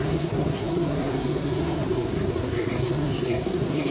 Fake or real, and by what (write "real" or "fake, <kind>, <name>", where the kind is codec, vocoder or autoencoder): fake, codec, SNAC